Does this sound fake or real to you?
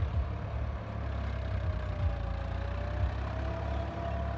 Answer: real